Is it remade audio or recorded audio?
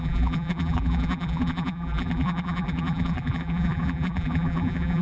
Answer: remade